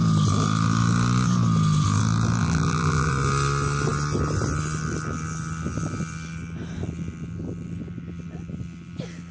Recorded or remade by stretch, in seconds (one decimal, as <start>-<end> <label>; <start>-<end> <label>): 0.0-2.4 recorded; 2.4-3.1 remade; 3.1-9.3 recorded